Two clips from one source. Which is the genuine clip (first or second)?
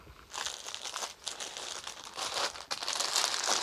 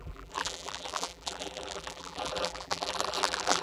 first